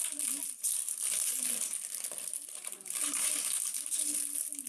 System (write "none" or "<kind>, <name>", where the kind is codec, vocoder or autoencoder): none